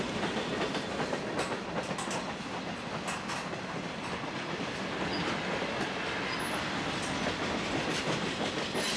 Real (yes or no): yes